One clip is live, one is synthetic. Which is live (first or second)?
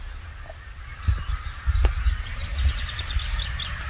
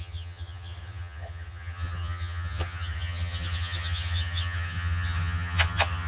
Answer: first